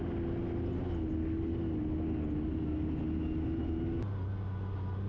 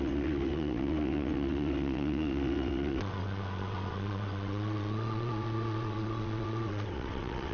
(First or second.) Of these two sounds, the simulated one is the second